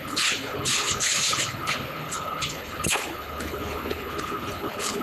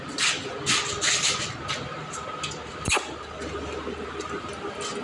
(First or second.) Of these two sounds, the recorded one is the second